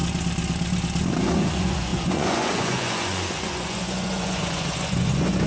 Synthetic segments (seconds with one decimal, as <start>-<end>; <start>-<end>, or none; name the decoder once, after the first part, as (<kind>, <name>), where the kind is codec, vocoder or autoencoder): 1.1-5.5 (vocoder, Vocos)